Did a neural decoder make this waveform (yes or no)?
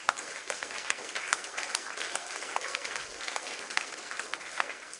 yes